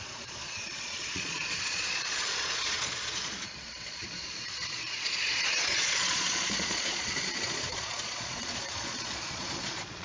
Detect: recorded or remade remade